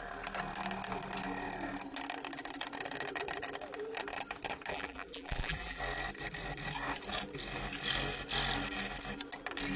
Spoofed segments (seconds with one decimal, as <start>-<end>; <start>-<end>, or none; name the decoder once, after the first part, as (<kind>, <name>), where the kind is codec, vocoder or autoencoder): 4.7-5.8 (vocoder, BigVGAN v2)